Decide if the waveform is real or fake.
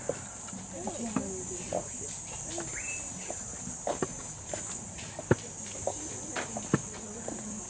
real